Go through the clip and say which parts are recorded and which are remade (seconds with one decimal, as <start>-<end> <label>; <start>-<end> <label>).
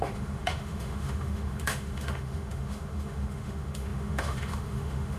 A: 0.0-5.2 remade